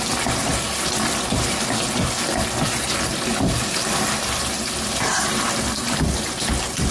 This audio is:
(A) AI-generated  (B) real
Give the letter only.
B